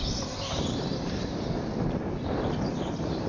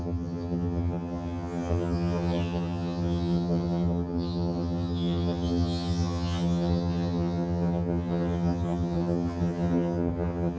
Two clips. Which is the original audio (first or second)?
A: first